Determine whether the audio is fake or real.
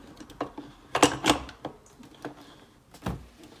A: real